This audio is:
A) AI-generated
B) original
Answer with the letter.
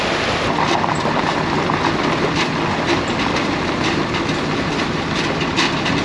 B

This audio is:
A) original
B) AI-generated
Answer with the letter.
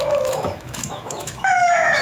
B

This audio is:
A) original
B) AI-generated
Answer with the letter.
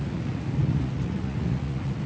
B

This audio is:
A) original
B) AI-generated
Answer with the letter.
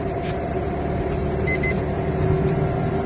A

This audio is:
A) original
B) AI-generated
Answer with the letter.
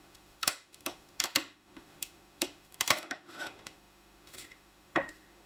B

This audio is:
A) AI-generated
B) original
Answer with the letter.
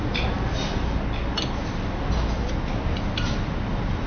B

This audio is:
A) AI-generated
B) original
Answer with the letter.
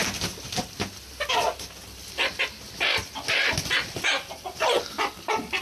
B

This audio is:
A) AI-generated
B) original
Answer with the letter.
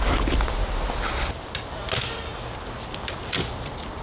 B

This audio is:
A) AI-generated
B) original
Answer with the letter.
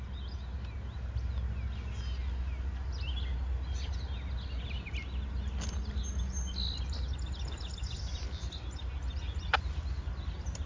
B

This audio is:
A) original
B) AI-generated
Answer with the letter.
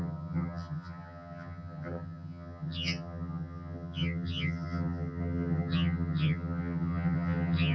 B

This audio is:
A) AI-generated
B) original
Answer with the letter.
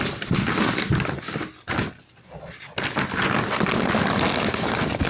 B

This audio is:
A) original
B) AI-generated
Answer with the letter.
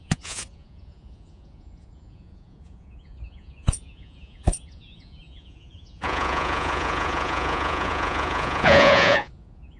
B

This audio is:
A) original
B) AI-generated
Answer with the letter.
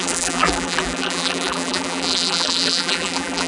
B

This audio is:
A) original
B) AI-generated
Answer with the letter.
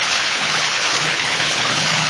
B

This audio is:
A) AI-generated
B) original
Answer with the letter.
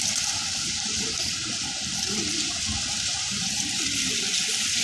B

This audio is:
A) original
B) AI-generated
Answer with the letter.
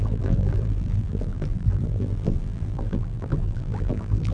B